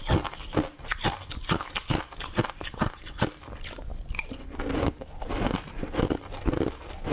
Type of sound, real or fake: real